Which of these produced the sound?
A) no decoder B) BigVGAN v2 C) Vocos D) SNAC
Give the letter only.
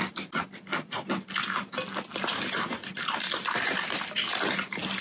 A